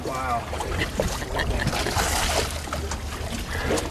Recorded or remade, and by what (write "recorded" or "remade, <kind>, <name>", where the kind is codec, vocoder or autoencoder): recorded